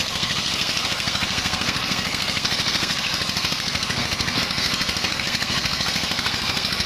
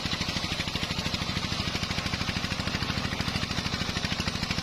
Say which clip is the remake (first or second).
first